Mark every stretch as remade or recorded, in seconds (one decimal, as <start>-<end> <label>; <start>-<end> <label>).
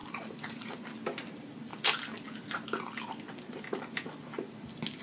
0.0-0.8 remade; 0.8-5.0 recorded